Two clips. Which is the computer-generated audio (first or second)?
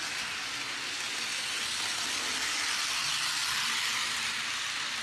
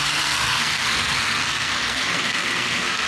second